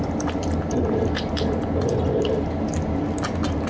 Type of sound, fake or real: real